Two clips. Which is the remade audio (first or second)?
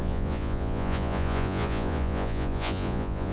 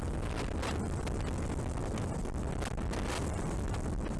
first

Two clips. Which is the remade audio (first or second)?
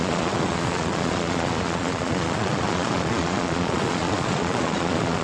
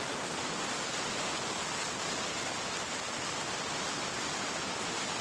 first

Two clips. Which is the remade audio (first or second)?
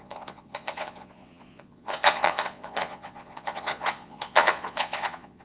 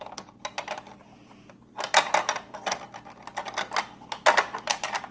first